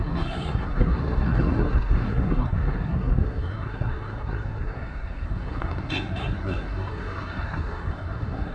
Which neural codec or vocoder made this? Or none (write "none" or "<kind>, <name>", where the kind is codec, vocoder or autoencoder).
codec, SNAC